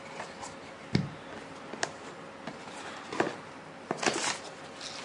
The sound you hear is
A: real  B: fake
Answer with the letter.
A